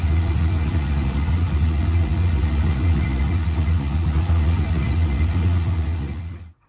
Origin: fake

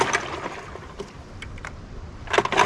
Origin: real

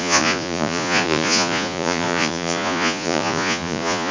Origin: fake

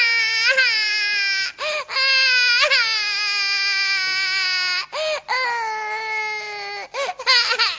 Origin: real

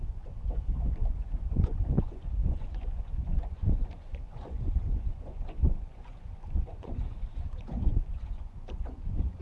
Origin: fake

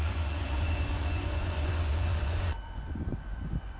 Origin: fake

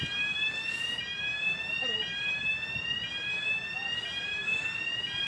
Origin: real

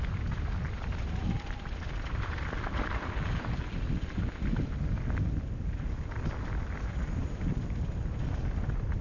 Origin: real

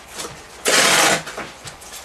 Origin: fake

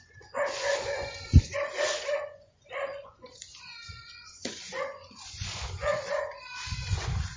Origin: fake